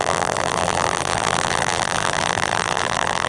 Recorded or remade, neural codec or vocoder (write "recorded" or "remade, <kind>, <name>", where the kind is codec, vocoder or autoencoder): remade, vocoder, BigVGAN v2